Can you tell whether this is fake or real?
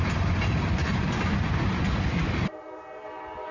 real